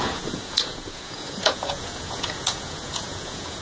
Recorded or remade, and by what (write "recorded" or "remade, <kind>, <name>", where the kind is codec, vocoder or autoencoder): remade, vocoder, Vocos